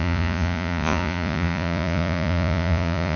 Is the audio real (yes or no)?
no